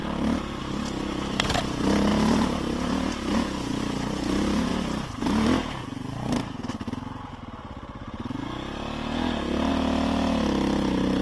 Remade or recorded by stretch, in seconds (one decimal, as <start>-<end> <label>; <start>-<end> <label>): 0.0-11.2 recorded